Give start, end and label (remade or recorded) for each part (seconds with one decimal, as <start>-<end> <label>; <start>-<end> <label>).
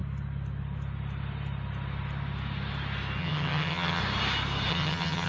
0.0-3.2 recorded; 3.2-4.0 remade; 4.0-4.7 recorded; 4.7-5.3 remade